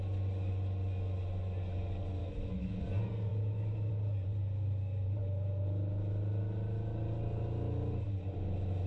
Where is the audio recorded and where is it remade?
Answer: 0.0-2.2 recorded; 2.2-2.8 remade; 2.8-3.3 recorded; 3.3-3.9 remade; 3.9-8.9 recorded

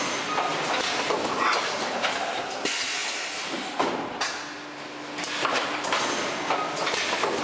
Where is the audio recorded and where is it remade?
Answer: 0.0-7.4 recorded

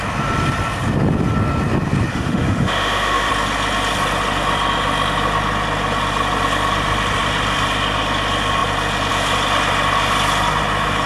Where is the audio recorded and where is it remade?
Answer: 0.0-2.1 recorded; 2.1-3.3 remade; 3.3-11.1 recorded

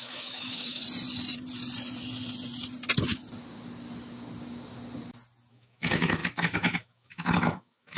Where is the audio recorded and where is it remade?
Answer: 0.0-0.8 remade; 0.8-5.5 recorded; 5.5-8.0 remade

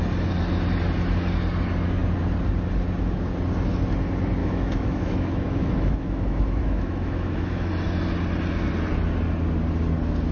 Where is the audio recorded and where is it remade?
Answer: 0.0-4.4 recorded; 4.4-7.7 remade; 7.7-10.3 recorded